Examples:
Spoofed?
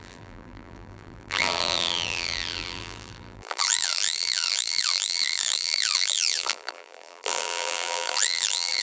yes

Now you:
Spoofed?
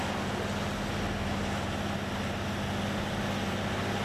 no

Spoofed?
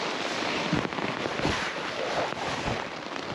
yes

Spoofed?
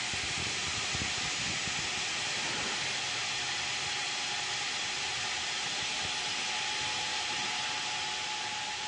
no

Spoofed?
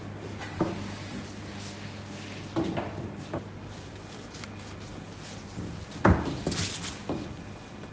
no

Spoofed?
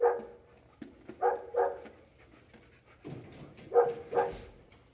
no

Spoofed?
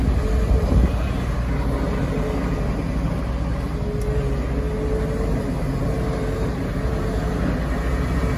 no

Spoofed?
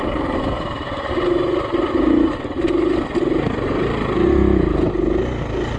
no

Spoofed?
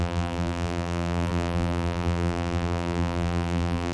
yes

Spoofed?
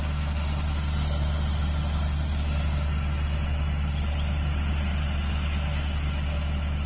no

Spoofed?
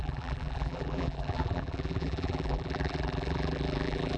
yes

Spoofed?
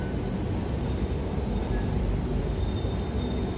no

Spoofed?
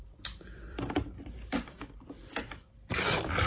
yes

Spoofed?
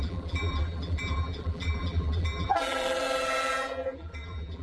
yes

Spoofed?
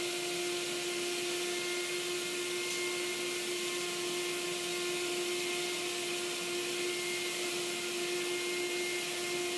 no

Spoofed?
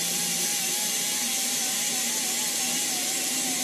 no